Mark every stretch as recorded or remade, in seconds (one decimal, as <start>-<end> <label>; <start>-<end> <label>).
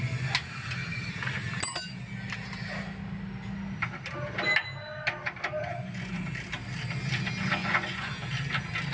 0.0-5.6 recorded; 5.6-6.2 remade; 6.2-7.6 recorded; 7.6-8.1 remade; 8.1-8.9 recorded